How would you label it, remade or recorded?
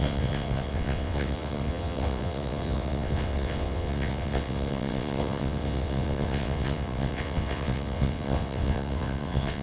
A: remade